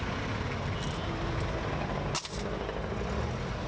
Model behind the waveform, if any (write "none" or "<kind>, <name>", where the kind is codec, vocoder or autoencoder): none